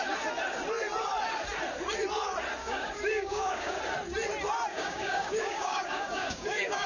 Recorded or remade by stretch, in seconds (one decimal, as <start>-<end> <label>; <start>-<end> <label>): 0.0-2.6 recorded; 2.6-3.8 remade; 3.8-4.7 recorded; 4.7-6.9 remade